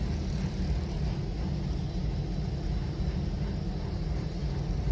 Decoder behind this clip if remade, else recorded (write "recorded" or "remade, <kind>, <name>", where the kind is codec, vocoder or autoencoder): recorded